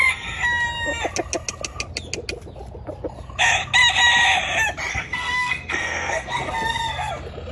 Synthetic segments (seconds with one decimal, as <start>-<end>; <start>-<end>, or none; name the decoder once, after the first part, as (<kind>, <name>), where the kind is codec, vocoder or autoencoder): 4.9-7.1 (codec, SNAC)